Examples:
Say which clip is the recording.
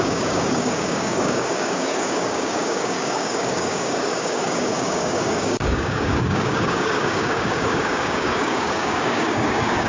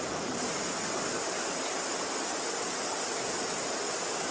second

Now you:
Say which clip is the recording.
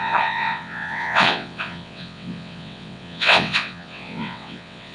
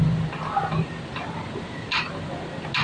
second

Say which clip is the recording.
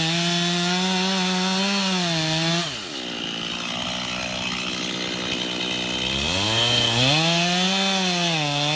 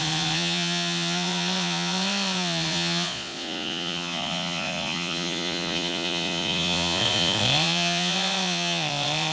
first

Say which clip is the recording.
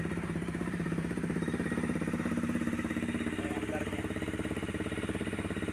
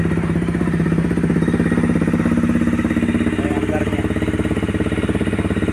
second